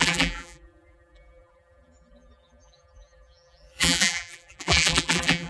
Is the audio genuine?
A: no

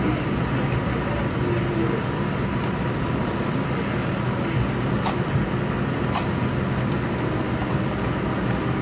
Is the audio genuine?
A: yes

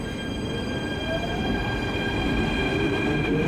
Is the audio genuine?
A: yes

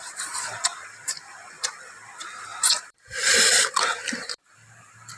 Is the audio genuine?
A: no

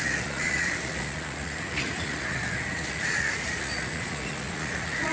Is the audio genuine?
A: no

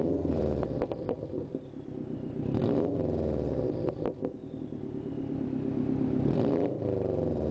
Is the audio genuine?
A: no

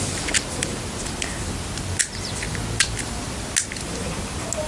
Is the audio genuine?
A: yes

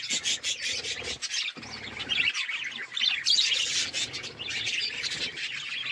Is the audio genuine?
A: yes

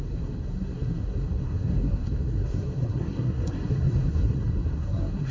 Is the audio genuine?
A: no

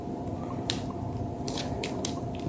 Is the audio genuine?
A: no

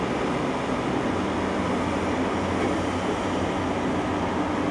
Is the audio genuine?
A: yes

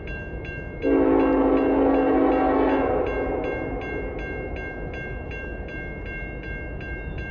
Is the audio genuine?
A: yes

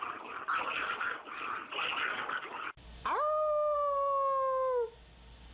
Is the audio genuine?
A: yes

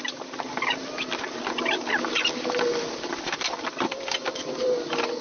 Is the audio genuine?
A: no